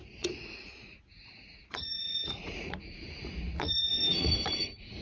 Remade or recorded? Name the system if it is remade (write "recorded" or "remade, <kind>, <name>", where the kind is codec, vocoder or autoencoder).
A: remade, vocoder, Vocos